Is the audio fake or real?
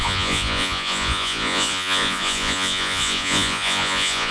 fake